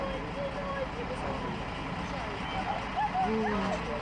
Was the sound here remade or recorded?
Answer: recorded